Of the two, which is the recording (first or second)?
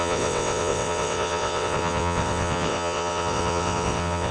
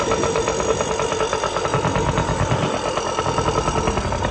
second